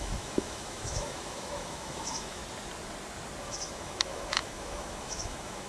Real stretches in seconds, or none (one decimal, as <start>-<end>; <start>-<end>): 2.4-3.4